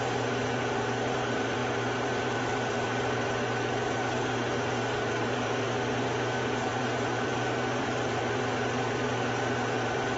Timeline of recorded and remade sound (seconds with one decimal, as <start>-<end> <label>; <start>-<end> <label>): 0.0-10.2 remade